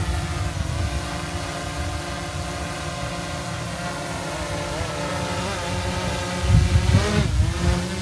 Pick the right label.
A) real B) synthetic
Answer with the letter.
A